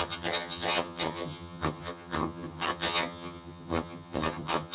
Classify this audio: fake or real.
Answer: fake